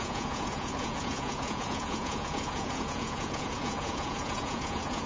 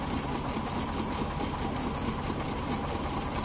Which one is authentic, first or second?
second